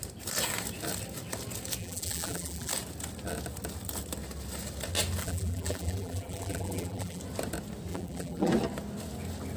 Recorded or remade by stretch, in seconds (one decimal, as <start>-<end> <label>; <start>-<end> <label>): 0.0-1.8 recorded; 1.8-2.7 remade; 2.7-5.2 recorded; 5.2-7.2 remade; 7.2-7.9 recorded; 7.9-8.5 remade; 8.5-9.6 recorded